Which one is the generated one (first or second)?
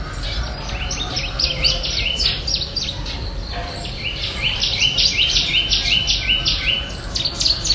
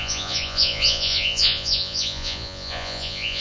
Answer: second